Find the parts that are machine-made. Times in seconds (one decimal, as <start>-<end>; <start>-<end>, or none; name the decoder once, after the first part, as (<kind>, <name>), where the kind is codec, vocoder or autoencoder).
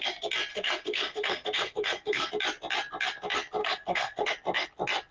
0.5-2.3 (codec, SNAC); 3.6-4.3